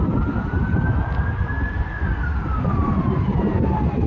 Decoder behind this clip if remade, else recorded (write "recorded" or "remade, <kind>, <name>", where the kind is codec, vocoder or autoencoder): recorded